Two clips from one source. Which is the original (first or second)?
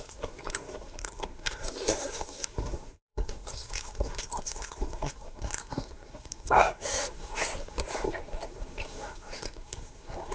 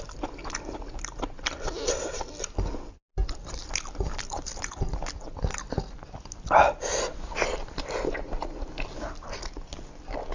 second